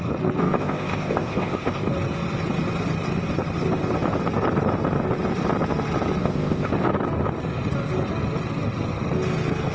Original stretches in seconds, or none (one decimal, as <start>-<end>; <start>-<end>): 0.0-0.4; 1.9-6.2; 6.7-9.7